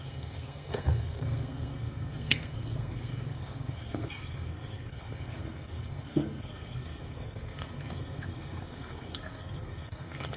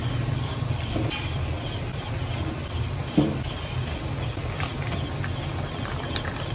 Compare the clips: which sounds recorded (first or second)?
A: second